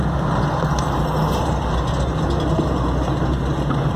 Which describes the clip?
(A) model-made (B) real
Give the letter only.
B